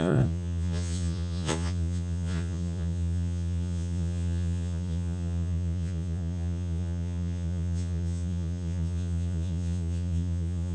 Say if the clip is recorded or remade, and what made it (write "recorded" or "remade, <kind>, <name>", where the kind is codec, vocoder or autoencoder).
remade, vocoder, Vocos